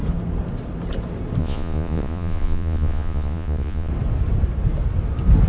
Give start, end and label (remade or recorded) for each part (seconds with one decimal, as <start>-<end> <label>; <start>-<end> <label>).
0.0-1.4 recorded; 1.4-3.9 remade; 3.9-5.5 recorded